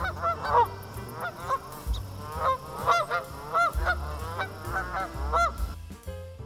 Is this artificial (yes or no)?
no